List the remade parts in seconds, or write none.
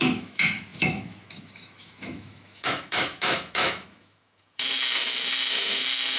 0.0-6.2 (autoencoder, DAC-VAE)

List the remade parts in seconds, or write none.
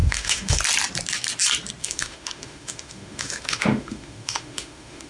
0.0-0.6 (autoencoder, DAC-VAE); 1.8-5.1